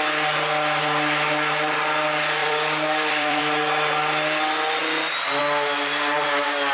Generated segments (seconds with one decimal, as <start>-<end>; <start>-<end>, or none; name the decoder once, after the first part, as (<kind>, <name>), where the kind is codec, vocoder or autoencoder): 2.4-3.4 (vocoder, BigVGAN v2); 4.8-5.4